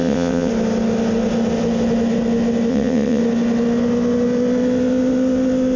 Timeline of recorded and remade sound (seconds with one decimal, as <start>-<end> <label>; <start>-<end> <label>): 0.0-0.5 remade; 0.5-2.7 recorded; 2.7-3.2 remade; 3.2-5.8 recorded